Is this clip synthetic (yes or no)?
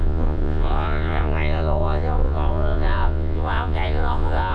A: yes